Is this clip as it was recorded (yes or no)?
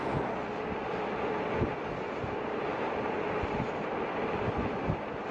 yes